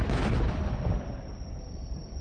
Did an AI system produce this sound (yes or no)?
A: yes